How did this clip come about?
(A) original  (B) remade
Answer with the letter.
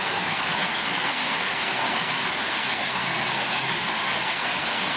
B